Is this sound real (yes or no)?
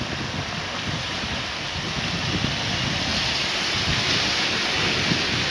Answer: yes